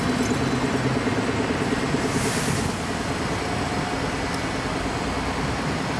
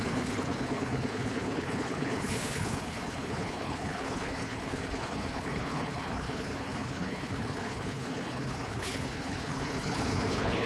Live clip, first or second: first